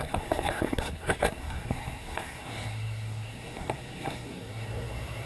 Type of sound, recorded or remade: remade